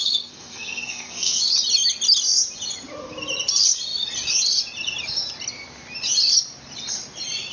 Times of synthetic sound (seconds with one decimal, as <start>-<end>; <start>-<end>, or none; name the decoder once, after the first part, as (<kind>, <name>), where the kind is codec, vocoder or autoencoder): 0.0-1.4 (codec, SNAC)